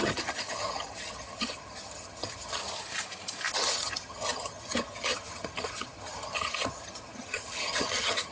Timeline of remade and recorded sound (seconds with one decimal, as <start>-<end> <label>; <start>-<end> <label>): 0.0-2.6 remade; 2.6-3.5 recorded; 3.5-8.3 remade